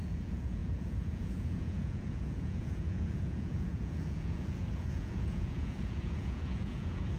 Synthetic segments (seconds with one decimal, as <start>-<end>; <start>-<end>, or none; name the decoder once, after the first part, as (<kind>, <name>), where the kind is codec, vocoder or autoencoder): 0.0-7.2 (vocoder, Vocos)

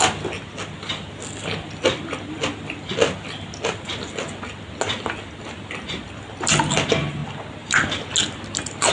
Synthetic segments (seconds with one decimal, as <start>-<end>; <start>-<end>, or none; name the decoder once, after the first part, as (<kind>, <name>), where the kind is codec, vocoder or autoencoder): none

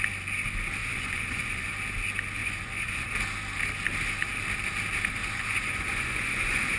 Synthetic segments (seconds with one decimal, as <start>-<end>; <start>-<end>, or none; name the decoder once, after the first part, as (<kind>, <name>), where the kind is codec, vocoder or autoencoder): 0.8-1.7 (vocoder, Vocos); 2.4-3.2; 5.2-6.8